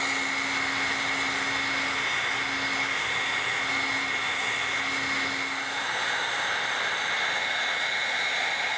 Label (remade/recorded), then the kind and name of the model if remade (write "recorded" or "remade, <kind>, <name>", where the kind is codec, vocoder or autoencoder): recorded